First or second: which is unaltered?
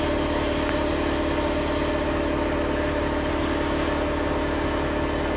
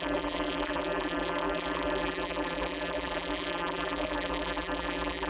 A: first